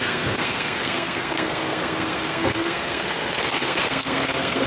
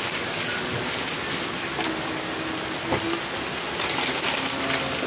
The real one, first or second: second